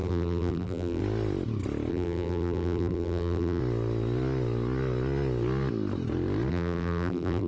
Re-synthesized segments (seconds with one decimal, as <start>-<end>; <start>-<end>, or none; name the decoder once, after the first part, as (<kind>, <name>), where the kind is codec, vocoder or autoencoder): 0.0-1.0 (vocoder, BigVGAN v2); 1.9-3.6; 6.5-7.5

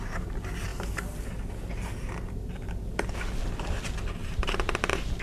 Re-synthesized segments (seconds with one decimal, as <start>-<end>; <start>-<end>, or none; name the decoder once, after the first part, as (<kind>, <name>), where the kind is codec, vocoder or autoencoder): 4.2-5.2 (vocoder, BigVGAN v2)